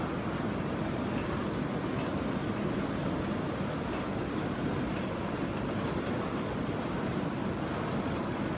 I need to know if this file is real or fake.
real